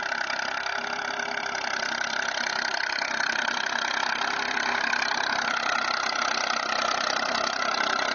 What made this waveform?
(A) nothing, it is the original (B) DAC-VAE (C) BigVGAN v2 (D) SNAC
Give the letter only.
A